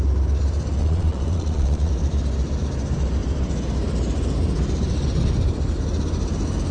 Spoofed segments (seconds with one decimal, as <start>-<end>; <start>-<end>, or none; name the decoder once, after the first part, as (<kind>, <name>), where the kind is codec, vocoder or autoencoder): 0.8-1.9 (vocoder, Vocos)

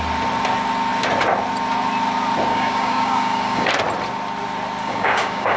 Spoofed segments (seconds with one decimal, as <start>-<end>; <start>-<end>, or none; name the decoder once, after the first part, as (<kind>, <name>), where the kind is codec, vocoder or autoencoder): 2.5-3.7 (codec, DAC); 4.8-5.6

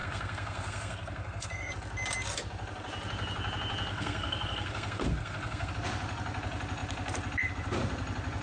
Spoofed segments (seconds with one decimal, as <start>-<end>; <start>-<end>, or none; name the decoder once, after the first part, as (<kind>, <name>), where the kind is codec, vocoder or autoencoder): 0.0-1.7 (codec, SNAC); 3.9-5.7